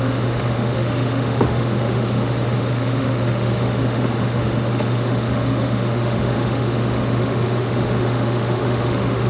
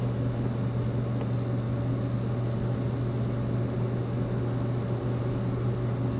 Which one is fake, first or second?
first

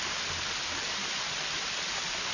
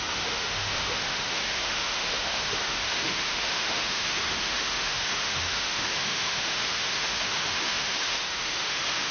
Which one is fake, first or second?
second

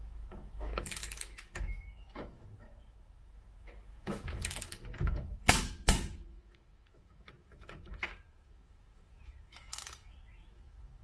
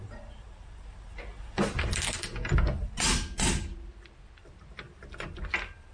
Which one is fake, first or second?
first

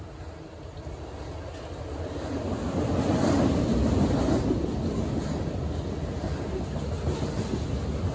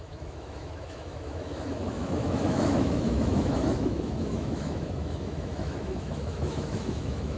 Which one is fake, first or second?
second